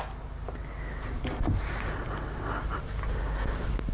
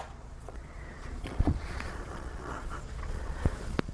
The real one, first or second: first